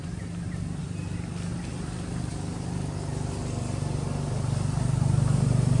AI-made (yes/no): no